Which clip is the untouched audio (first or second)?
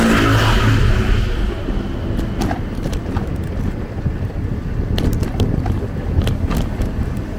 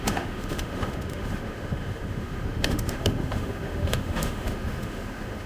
first